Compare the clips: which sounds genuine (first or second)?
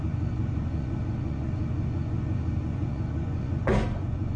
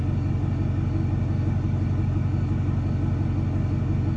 second